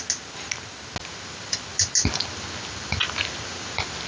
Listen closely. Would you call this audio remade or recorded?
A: recorded